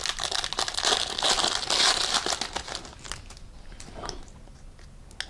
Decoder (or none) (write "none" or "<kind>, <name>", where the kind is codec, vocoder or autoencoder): none